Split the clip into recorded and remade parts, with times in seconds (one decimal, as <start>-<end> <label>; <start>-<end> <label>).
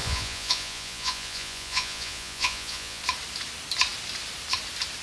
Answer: 0.0-3.0 remade; 3.0-5.0 recorded